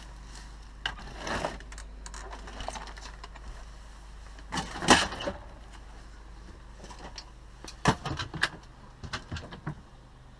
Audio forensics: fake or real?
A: real